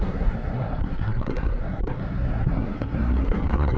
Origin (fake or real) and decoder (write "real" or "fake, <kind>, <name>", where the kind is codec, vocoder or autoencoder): fake, codec, SNAC